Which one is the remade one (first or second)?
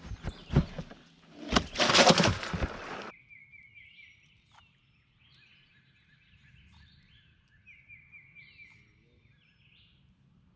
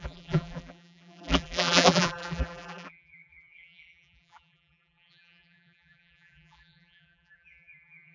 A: second